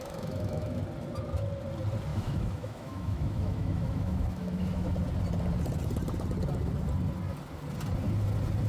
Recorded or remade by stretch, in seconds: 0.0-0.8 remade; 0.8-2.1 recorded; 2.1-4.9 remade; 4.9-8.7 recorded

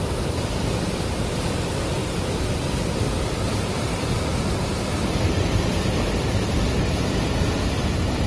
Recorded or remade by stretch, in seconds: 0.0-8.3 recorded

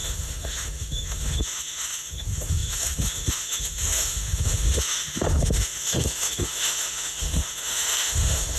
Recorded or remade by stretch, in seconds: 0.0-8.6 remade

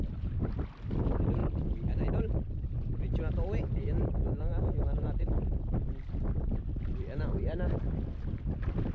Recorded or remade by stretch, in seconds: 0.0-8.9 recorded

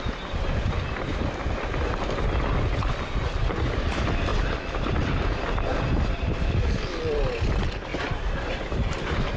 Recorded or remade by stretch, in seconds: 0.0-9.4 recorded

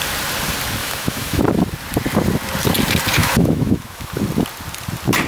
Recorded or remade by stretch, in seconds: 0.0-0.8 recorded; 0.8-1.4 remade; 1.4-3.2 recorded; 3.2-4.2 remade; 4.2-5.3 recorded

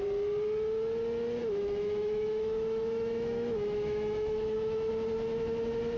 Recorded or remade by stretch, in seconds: 0.0-1.4 recorded; 1.4-4.9 remade; 4.9-6.0 recorded

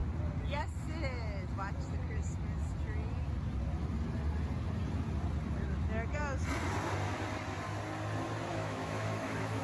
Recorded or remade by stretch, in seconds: 0.0-8.5 recorded; 8.5-9.6 remade